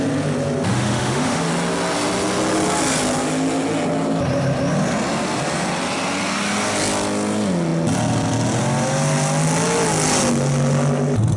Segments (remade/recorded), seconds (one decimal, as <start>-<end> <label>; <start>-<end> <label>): 0.0-0.7 recorded; 0.7-1.5 remade; 1.5-11.4 recorded